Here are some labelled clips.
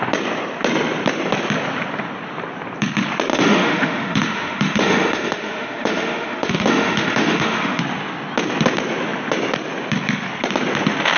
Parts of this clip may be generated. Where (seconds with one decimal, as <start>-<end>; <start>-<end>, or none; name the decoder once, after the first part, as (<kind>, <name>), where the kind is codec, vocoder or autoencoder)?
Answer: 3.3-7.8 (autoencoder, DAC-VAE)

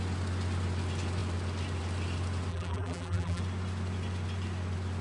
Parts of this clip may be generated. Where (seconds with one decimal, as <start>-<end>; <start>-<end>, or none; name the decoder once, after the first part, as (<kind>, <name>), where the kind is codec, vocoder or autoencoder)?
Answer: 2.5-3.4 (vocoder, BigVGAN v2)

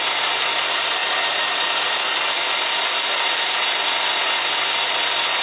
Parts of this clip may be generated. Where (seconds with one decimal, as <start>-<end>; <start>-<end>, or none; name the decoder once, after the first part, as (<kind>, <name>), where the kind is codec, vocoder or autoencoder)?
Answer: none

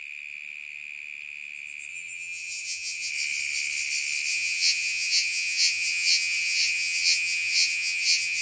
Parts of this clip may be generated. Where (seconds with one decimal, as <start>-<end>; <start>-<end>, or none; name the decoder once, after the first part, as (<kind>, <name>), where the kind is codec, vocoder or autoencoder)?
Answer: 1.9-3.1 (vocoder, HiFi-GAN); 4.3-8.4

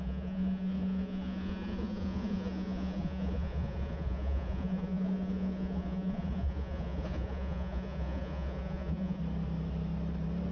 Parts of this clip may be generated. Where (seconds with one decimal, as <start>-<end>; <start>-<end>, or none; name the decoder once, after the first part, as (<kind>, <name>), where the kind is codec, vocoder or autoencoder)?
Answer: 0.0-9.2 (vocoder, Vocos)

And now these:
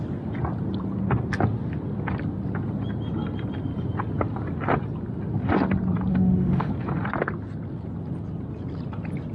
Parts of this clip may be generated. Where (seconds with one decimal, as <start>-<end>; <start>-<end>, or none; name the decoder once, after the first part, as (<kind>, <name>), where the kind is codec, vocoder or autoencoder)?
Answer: 6.1-6.7 (autoencoder, DAC-VAE)